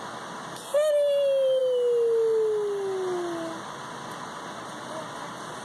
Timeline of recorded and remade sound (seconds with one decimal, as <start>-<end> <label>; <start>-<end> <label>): 0.0-5.6 recorded

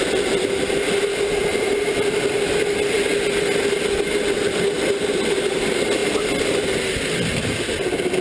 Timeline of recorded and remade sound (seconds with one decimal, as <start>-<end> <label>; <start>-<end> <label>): 0.0-8.2 recorded

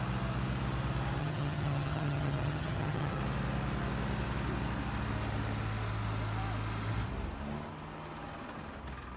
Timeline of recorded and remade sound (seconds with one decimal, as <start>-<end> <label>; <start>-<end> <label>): 0.0-1.2 recorded; 1.2-3.2 remade; 3.2-9.2 recorded

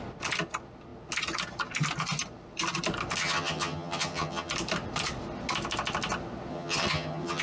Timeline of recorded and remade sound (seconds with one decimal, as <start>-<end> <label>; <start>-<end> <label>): 0.0-3.2 recorded; 3.2-4.5 remade; 4.5-6.5 recorded; 6.5-7.4 remade

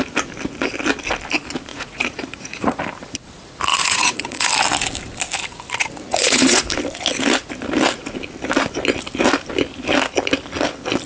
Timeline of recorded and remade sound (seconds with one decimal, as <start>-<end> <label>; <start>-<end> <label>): 0.0-1.7 recorded; 1.7-2.8 remade; 2.8-3.7 recorded; 3.7-4.5 remade; 4.5-6.1 recorded; 6.1-6.7 remade; 6.7-11.1 recorded